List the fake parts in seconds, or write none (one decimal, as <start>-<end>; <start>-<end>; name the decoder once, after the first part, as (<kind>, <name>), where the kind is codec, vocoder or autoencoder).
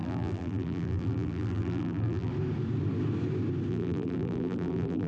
0.0-2.3 (vocoder, BigVGAN v2); 3.7-5.1